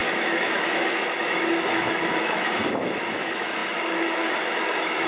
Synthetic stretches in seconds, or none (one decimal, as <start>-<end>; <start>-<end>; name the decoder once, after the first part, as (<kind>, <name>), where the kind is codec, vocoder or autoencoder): 0.0-5.1 (autoencoder, DAC-VAE)